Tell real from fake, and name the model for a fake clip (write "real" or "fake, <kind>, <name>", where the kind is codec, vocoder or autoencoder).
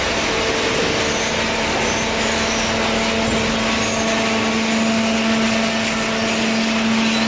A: real